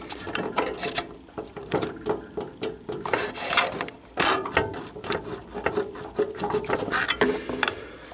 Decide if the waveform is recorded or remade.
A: recorded